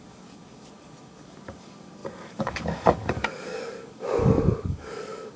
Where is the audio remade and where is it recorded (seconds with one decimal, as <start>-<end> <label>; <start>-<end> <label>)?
0.0-5.4 remade